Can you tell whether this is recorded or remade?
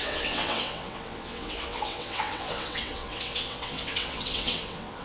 remade